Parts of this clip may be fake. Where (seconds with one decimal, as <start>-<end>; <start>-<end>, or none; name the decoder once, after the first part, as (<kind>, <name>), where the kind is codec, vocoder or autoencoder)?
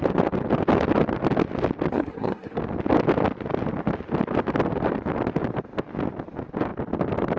1.9-2.6 (codec, SNAC)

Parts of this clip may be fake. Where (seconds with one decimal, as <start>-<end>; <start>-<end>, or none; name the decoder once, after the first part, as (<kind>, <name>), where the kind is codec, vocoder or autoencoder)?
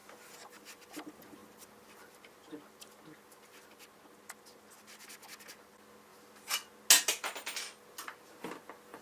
0.0-0.8 (vocoder, BigVGAN v2)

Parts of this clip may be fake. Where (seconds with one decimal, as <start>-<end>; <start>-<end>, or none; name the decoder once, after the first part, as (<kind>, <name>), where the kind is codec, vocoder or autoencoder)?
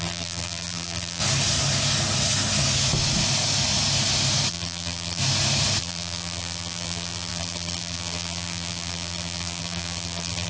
0.0-1.2 (vocoder, BigVGAN v2); 4.5-5.2; 5.8-10.5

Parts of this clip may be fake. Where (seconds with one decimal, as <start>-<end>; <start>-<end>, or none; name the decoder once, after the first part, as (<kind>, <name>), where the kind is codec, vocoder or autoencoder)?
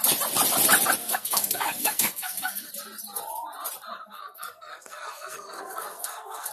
1.0-2.7 (codec, SNAC); 4.1-6.5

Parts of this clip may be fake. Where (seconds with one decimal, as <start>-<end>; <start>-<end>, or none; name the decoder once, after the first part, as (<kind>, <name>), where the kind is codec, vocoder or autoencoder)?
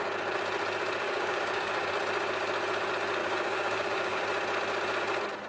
1.0-1.9 (codec, DAC); 3.2-4.2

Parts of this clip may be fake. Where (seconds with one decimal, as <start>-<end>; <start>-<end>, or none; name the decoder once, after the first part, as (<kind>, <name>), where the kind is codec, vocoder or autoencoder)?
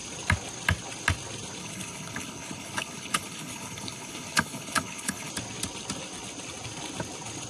1.6-5.3 (codec, HILCodec)